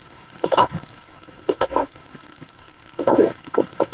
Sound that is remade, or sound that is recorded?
remade